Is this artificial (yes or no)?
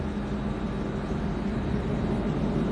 no